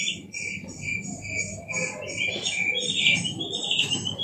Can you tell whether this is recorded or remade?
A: recorded